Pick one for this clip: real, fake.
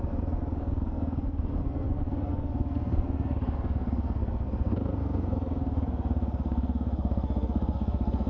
fake